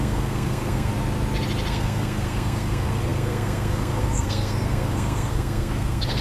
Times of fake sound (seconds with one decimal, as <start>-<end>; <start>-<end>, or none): 0.0-0.9; 1.7-6.2